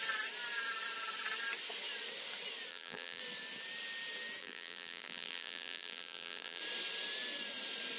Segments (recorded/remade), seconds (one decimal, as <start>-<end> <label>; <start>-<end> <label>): 0.0-2.7 recorded; 2.7-3.2 remade; 3.2-4.4 recorded; 4.4-6.6 remade; 6.6-8.0 recorded